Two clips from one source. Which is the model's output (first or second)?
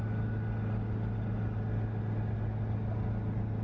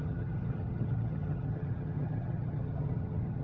second